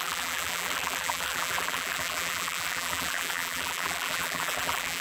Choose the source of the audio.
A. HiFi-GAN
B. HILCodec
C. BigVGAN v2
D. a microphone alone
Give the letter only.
C